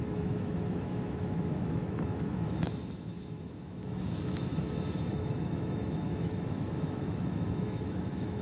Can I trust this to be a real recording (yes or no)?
no